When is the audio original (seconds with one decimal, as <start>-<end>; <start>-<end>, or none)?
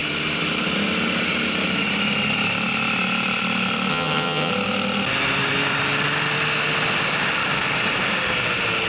0.0-3.9; 4.5-8.9